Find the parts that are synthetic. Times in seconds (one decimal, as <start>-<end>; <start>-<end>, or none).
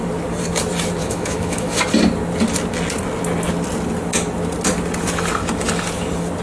1.0-1.8